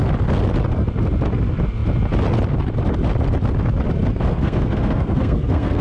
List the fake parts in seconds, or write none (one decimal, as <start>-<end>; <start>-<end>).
4.1-5.8